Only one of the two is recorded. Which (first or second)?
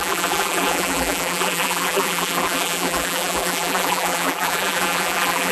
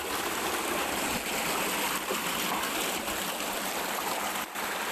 second